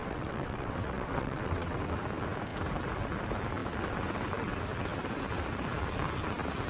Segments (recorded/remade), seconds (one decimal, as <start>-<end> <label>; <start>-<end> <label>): 0.0-1.8 remade; 1.8-6.7 recorded